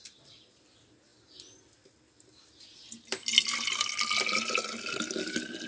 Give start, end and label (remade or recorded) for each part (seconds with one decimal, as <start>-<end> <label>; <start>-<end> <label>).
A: 0.0-5.7 recorded